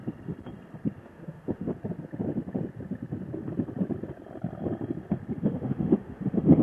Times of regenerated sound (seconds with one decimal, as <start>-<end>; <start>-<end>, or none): 1.0-1.7; 5.4-6.6